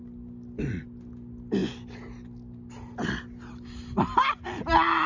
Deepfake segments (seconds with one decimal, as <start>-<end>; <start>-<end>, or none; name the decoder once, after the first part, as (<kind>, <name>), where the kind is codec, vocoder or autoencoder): none